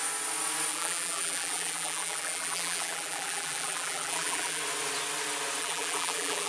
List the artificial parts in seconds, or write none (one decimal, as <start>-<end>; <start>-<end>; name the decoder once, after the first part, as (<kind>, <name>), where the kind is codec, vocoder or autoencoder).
0.7-4.6 (vocoder, BigVGAN v2); 5.6-6.5